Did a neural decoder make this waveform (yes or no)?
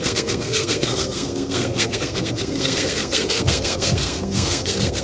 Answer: yes